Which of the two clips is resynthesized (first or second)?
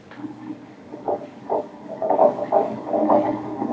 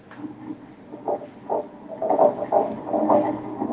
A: first